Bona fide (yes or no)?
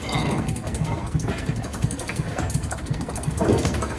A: no